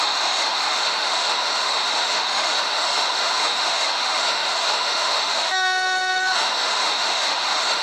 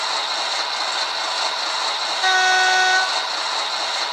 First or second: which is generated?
first